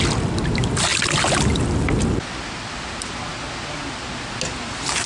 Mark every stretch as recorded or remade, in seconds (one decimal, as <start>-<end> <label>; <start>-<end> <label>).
0.0-5.1 recorded